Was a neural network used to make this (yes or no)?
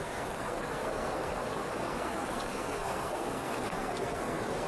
yes